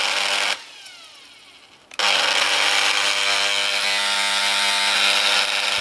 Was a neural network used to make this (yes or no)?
no